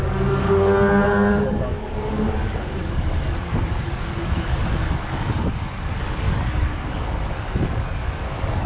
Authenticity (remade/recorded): remade